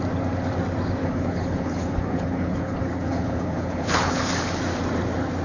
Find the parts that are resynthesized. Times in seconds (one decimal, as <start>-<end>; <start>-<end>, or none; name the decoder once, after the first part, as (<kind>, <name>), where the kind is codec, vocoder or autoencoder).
1.0-4.2 (codec, HILCodec)